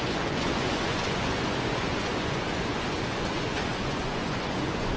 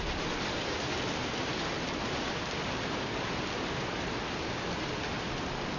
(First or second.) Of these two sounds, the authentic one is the second